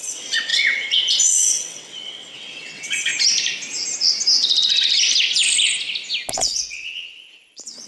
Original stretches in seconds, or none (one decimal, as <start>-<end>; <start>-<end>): 3.1-6.3